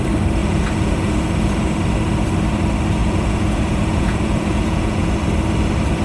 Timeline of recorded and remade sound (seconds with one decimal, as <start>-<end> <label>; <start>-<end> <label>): 0.0-0.4 recorded; 0.4-1.7 remade; 1.7-3.0 recorded; 3.0-5.1 remade; 5.1-6.0 recorded